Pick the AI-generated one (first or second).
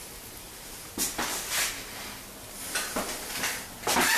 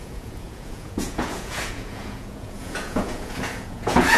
second